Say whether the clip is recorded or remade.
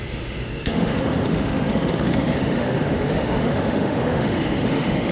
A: remade